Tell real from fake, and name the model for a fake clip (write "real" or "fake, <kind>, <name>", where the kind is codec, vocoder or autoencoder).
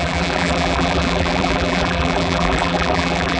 fake, vocoder, BigVGAN v2